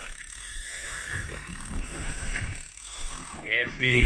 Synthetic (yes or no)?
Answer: yes